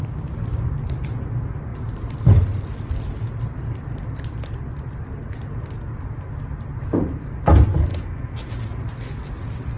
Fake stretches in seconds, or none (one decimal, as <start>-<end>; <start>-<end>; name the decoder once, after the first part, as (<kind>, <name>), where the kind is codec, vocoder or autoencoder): 7.9-8.5 (autoencoder, DAC-VAE)